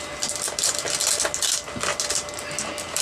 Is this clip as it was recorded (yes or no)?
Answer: yes